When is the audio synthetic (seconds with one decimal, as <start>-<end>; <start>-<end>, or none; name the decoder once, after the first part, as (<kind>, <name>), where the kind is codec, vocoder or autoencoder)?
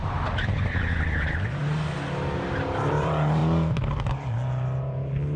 0.6-1.6 (vocoder, BigVGAN v2); 2.6-3.4